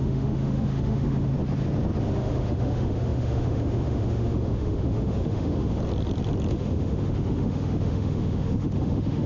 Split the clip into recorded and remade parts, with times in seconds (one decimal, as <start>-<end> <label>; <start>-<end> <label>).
0.0-1.3 remade; 1.3-2.0 recorded; 2.0-5.8 remade; 5.8-6.5 recorded; 6.5-9.3 remade